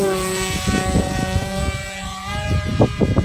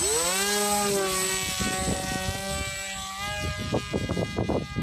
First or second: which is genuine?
second